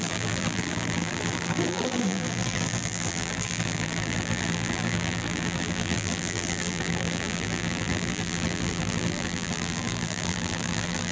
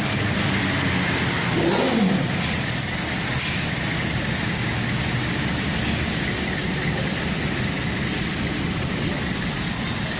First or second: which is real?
second